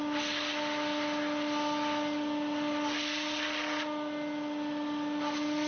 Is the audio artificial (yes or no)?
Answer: no